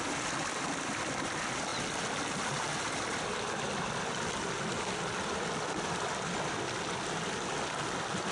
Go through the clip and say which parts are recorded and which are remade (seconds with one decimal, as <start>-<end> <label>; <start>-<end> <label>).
0.0-8.3 recorded

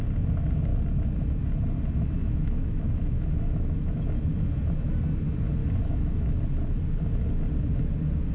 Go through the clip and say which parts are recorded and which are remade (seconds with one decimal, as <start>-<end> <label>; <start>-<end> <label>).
0.0-2.2 recorded; 2.2-4.0 remade; 4.0-5.6 recorded; 5.6-6.3 remade; 6.3-8.3 recorded

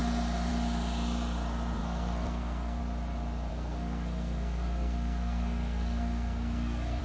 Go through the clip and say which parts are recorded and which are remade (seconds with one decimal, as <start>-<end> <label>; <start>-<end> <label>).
0.0-1.8 recorded; 1.8-2.8 remade; 2.8-3.5 recorded; 3.5-7.0 remade

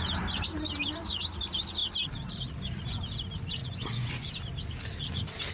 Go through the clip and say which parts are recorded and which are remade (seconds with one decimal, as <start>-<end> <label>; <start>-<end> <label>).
0.0-3.6 recorded; 3.6-4.4 remade; 4.4-5.5 recorded